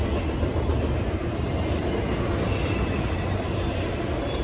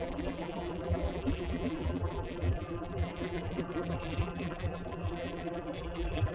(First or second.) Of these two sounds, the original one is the first